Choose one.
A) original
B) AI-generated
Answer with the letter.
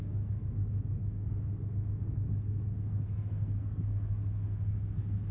B